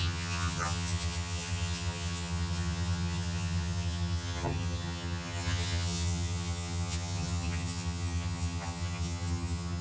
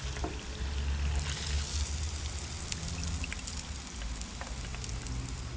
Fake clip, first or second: first